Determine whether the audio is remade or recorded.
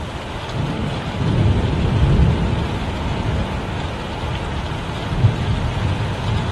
recorded